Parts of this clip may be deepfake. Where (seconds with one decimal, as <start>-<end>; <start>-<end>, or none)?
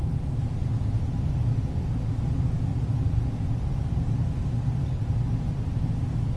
none